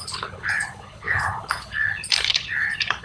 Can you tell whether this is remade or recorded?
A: remade